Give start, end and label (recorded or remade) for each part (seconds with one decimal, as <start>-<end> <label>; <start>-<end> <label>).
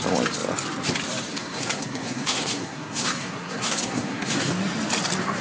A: 0.0-1.3 recorded; 1.3-4.5 remade; 4.5-5.4 recorded